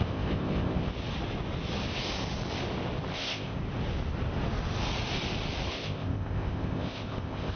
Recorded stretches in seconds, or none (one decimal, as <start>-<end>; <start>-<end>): 0.9-3.1; 3.6-5.7